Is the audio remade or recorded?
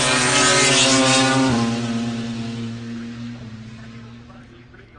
recorded